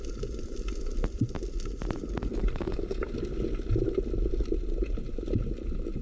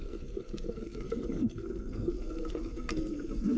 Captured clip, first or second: first